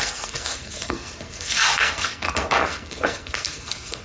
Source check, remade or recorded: remade